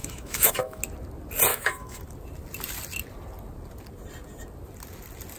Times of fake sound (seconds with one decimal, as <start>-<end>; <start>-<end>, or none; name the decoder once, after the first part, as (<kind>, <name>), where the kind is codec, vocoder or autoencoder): 0.0-0.8 (autoencoder, DAC-VAE); 1.5-2.0